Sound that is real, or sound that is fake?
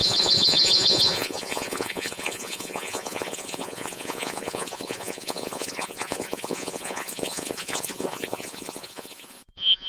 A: fake